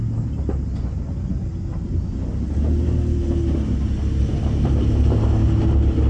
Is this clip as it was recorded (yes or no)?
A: yes